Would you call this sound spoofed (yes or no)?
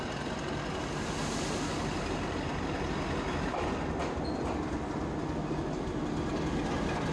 no